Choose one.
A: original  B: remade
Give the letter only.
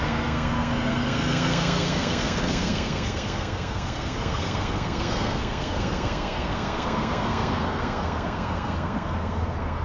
B